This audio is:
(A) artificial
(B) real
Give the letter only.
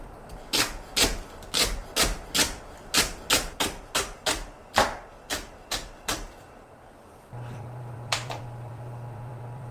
A